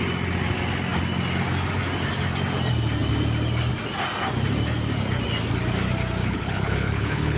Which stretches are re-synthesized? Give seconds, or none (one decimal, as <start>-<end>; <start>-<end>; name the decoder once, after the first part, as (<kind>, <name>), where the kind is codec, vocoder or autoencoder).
6.2-7.4 (codec, HILCodec)